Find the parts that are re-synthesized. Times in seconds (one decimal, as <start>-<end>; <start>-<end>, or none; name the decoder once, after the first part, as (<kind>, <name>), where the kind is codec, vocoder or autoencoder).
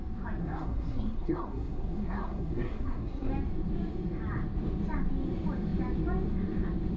0.4-3.3 (codec, SNAC)